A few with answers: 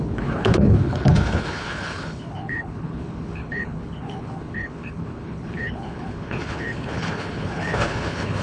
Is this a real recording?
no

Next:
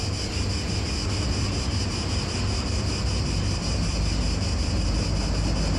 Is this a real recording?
yes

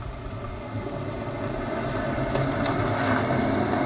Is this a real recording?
yes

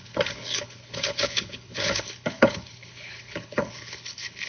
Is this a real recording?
no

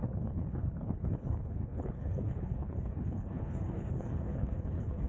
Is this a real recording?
no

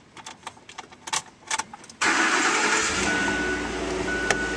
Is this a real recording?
yes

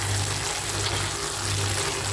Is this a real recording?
yes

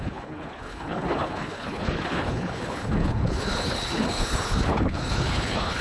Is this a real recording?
no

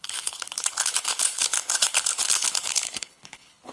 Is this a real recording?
no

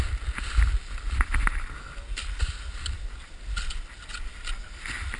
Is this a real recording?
yes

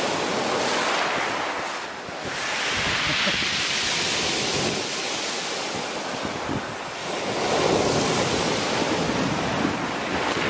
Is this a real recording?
yes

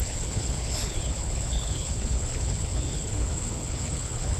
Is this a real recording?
no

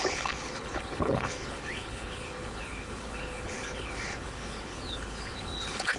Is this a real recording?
no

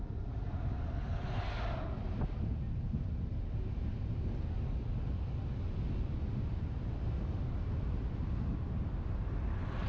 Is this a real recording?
yes